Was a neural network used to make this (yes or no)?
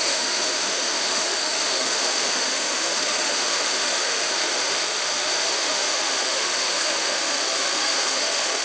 yes